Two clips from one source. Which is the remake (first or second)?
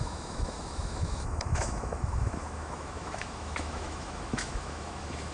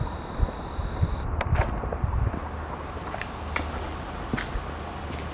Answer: first